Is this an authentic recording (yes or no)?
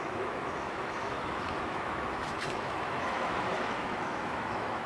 no